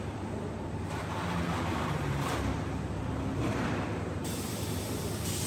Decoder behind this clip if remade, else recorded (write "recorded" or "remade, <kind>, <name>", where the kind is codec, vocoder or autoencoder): remade, vocoder, BigVGAN v2